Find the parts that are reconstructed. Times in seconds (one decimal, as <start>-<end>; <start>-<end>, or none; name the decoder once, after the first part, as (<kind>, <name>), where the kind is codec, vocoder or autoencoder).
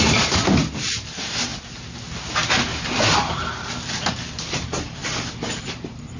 0.0-1.5 (vocoder, BigVGAN v2); 3.3-5.0; 5.6-6.2